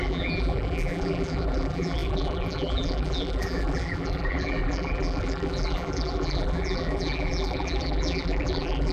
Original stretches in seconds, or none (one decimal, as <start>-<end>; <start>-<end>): none